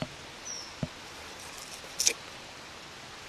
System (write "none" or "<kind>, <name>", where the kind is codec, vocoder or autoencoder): none